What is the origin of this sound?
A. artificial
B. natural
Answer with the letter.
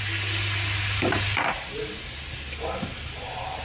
B